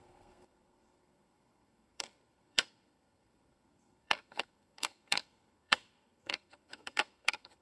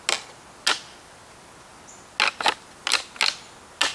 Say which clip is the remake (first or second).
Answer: first